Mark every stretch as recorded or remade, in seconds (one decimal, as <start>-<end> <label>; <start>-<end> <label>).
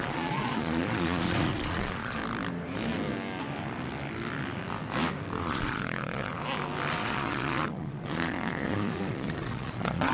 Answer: 0.0-2.2 remade; 2.2-5.4 recorded; 5.4-6.4 remade; 6.4-7.0 recorded; 7.0-10.1 remade